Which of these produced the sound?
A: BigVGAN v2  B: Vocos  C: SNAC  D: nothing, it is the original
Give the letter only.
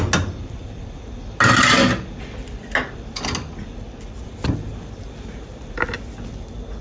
D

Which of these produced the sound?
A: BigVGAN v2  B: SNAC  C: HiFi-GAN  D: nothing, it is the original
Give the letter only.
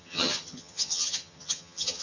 C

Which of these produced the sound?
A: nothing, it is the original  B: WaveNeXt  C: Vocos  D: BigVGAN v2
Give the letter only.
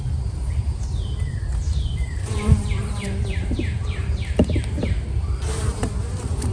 D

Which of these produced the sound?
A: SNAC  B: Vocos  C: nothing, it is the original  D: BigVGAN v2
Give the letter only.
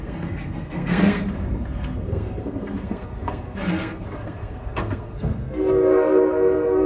A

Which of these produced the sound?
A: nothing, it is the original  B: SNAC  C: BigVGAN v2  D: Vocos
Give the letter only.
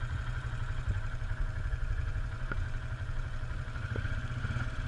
D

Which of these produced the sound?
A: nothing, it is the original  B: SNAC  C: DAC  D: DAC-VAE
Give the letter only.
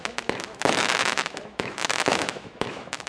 D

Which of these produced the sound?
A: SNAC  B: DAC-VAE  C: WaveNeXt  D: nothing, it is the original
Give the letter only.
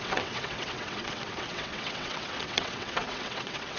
C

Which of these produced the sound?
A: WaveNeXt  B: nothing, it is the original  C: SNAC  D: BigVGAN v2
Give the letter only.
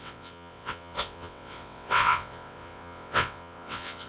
A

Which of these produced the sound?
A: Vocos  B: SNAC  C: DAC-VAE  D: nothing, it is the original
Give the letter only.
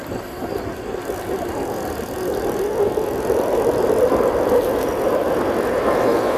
D